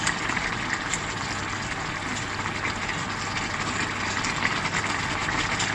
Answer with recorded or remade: recorded